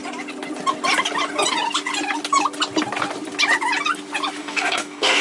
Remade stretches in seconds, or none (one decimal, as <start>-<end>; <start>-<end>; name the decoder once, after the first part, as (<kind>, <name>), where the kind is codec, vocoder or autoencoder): 4.4-5.2 (codec, DAC)